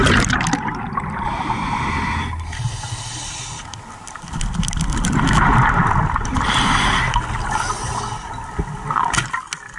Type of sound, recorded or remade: recorded